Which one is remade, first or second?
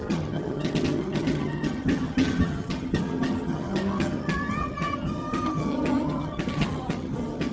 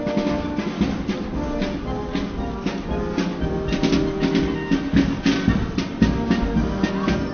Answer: first